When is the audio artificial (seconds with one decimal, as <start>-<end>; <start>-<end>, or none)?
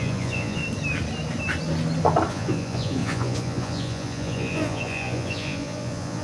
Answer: 0.0-0.6; 2.3-6.2